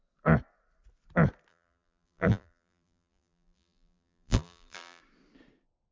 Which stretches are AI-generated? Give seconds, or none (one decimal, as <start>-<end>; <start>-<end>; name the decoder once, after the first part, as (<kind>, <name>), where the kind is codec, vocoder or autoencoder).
1.5-5.0 (vocoder, BigVGAN v2)